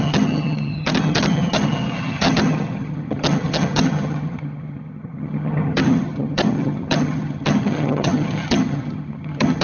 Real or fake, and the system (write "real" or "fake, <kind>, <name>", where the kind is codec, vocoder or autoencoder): fake, vocoder, HiFi-GAN